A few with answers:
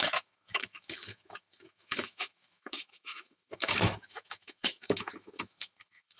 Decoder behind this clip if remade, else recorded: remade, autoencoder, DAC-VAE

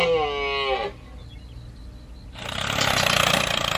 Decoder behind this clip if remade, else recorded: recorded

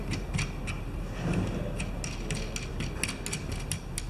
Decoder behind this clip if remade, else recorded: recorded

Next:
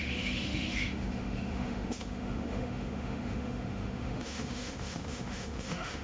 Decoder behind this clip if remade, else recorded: remade, autoencoder, DAC-VAE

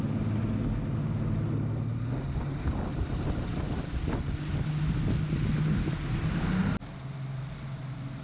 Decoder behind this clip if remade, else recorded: recorded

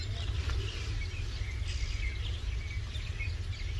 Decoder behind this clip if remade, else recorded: recorded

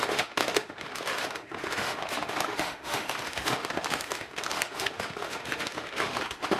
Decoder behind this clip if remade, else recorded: remade, autoencoder, DAC-VAE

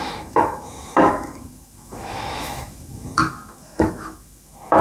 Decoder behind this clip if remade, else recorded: remade, autoencoder, DAC-VAE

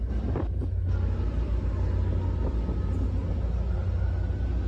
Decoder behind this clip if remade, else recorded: recorded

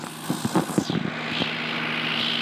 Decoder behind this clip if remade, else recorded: recorded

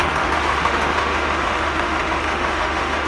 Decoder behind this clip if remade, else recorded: remade, autoencoder, DAC-VAE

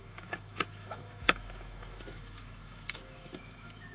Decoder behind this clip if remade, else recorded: remade, autoencoder, DAC-VAE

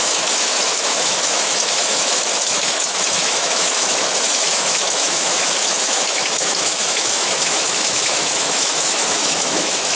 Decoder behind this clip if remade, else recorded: remade, autoencoder, DAC-VAE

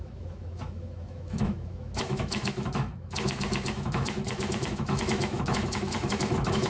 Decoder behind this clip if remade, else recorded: remade, autoencoder, DAC-VAE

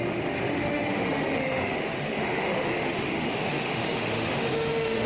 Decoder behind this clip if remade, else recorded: remade, autoencoder, DAC-VAE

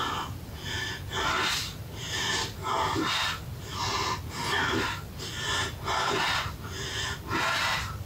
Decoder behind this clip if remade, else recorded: recorded